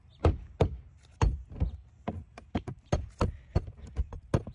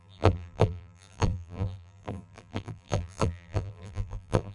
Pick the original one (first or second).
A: first